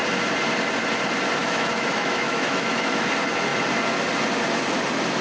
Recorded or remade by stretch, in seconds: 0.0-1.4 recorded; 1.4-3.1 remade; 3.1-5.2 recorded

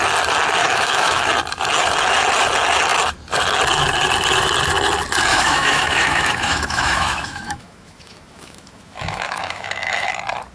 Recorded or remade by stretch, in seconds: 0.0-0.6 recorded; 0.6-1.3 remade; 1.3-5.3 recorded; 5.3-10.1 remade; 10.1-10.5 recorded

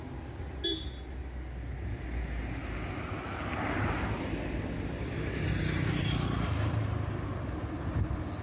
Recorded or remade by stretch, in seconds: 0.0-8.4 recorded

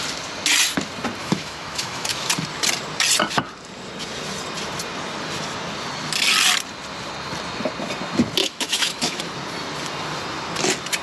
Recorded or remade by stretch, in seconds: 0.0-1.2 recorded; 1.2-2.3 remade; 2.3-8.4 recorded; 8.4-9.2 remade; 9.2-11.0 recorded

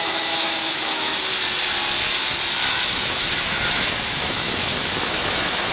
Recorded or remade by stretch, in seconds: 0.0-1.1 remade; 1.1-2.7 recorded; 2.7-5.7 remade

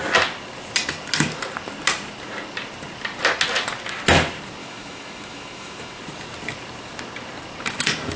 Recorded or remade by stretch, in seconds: 0.0-4.6 recorded; 4.6-6.0 remade; 6.0-8.2 recorded

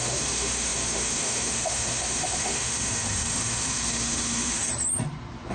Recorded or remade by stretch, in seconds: 0.0-4.6 remade; 4.6-5.5 recorded